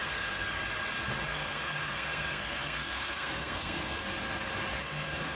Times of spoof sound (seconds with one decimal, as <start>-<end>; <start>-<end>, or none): 0.0-0.6; 1.3-4.0; 4.8-5.4